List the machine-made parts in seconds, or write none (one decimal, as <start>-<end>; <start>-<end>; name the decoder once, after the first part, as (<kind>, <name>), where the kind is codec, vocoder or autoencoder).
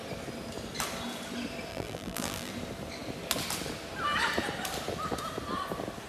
1.7-2.5 (vocoder, BigVGAN v2)